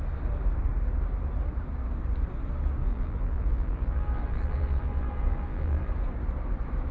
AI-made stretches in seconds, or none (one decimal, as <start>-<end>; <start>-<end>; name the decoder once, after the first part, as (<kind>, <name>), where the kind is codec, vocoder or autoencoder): 2.8-5.9 (vocoder, BigVGAN v2)